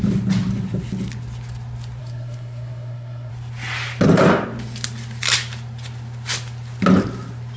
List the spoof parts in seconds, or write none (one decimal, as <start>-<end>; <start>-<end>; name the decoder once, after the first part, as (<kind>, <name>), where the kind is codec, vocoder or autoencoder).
2.0-3.3 (codec, SNAC)

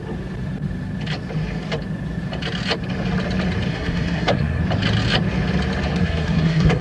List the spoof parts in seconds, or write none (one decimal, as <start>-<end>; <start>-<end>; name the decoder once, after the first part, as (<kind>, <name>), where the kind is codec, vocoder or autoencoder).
3.7-4.6 (codec, SNAC); 5.9-6.8

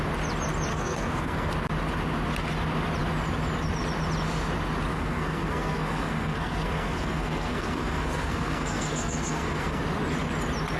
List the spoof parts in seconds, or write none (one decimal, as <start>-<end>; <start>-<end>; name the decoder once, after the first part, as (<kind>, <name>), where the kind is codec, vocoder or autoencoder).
0.7-1.5 (codec, SNAC); 4.9-9.8

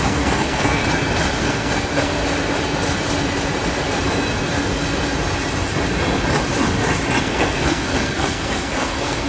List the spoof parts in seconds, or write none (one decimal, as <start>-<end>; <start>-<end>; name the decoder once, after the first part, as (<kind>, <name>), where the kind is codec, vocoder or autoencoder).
0.0-0.8 (codec, SNAC); 1.4-2.2; 7.2-9.3

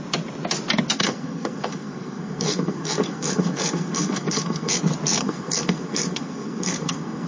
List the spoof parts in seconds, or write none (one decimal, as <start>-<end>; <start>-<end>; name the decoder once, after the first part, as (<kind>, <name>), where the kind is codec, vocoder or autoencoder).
0.9-4.7 (codec, SNAC); 5.2-7.3

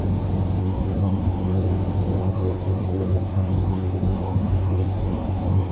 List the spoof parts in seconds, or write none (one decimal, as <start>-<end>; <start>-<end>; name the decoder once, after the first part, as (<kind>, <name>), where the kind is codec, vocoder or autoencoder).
0.6-1.7 (codec, SNAC); 2.2-5.7

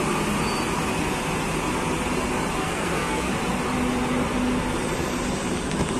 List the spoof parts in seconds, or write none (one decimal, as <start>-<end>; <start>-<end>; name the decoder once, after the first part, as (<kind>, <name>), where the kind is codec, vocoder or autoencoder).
2.6-3.3 (codec, SNAC)

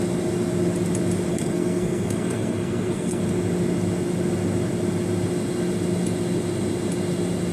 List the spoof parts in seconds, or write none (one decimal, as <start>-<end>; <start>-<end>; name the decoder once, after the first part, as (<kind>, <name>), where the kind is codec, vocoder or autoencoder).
1.3-3.2 (codec, SNAC)